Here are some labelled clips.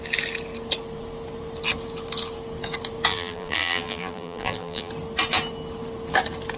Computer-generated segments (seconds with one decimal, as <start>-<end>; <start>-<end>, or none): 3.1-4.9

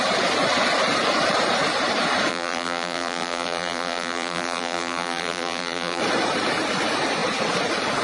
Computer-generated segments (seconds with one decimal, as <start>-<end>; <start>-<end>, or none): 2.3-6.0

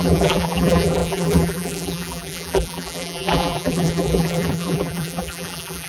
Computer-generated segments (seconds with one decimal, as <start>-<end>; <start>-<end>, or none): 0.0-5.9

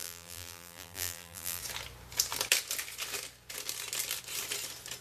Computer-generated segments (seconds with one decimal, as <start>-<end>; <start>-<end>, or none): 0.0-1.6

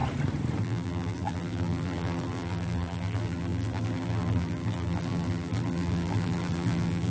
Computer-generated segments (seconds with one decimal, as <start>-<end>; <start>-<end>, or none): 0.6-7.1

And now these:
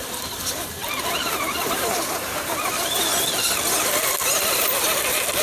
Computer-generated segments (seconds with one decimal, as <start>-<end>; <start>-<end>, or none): 0.0-3.1